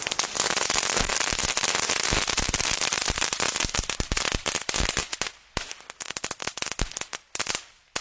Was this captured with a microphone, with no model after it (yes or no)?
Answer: yes